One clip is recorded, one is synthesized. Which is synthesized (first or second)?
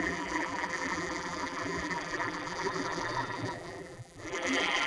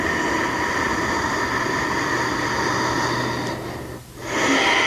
first